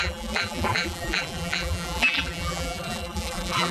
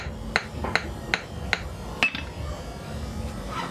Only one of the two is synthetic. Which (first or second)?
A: first